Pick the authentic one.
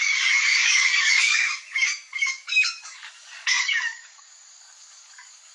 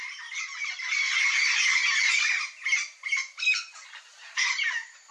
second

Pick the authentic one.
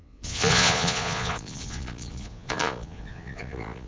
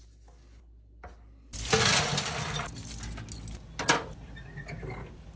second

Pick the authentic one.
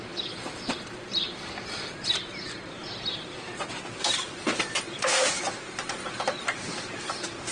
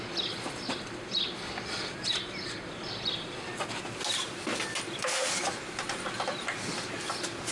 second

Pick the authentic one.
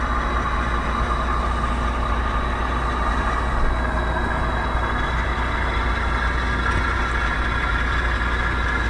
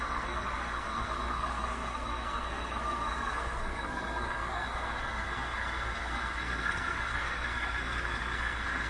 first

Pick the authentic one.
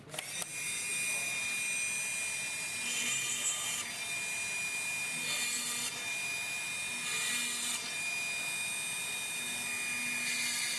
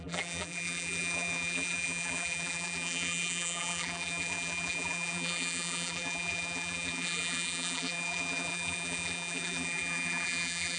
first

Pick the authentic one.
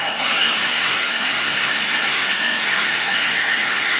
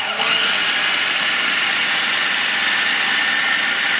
second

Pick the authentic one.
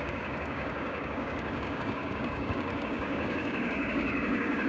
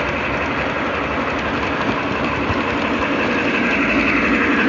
second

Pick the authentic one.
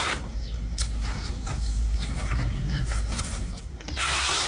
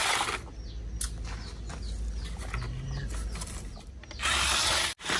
second